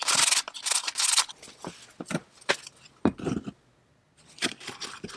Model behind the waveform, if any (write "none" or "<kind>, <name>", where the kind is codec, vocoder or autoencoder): none